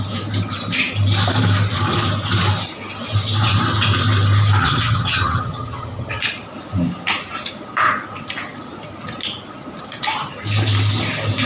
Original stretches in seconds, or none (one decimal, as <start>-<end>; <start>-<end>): 0.0-4.6; 6.2-11.5